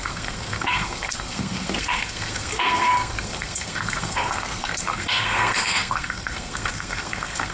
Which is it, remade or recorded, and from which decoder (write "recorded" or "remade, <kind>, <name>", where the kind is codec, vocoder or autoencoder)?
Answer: remade, codec, SNAC